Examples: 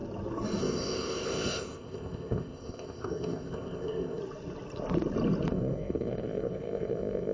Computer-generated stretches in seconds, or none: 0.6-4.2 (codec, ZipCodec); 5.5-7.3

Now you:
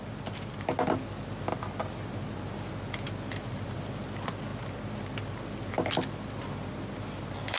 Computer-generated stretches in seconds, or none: none

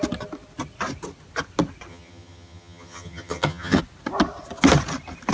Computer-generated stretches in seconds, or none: 1.9-3.8 (vocoder, HiFi-GAN)

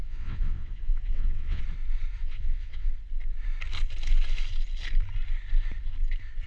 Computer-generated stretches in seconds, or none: 0.0-1.6 (vocoder, WaveNeXt); 2.2-2.9